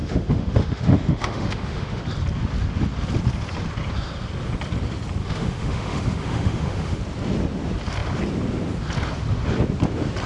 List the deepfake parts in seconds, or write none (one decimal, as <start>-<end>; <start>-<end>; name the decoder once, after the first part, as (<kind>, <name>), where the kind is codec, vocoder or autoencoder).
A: 0.0-2.0 (autoencoder, DAC-VAE); 5.2-7.0